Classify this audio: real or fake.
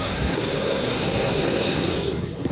fake